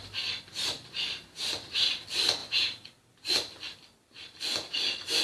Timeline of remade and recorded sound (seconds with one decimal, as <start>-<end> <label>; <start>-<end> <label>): 0.0-5.2 recorded